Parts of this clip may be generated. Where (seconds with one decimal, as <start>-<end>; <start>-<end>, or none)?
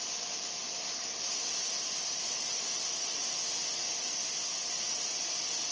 none